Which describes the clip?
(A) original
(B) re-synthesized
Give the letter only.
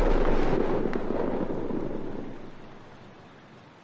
A